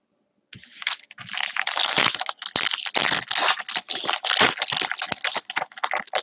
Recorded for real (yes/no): yes